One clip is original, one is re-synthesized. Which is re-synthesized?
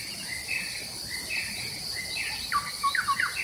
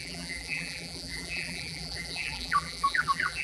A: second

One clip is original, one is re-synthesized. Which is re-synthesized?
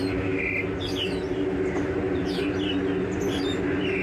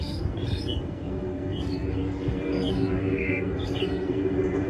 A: second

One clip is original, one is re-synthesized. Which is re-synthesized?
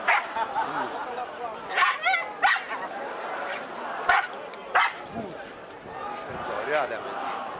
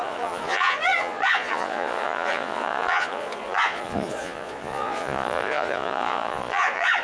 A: second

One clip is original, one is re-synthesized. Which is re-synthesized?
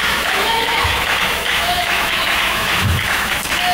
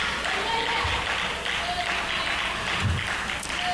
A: first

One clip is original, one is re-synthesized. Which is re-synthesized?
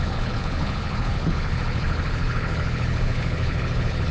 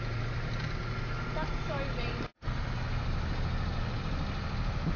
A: first